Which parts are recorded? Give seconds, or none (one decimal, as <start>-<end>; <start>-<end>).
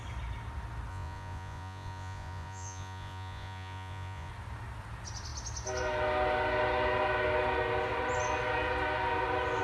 0.0-0.9; 4.3-9.6